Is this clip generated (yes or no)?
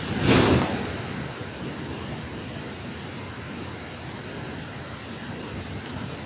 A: no